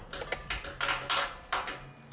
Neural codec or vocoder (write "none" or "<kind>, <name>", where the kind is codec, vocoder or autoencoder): none